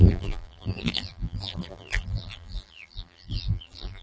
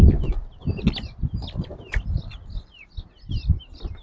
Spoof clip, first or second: first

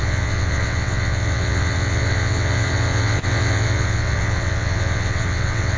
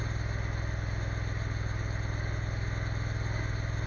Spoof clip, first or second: first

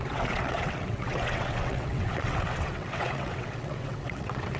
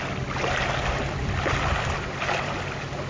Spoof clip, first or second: first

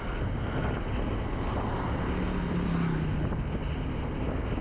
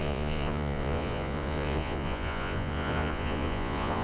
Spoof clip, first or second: second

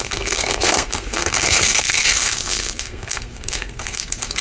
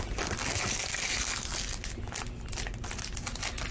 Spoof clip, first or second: first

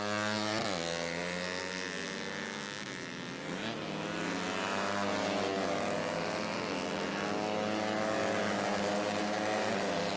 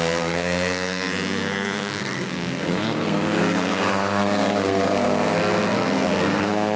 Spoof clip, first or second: second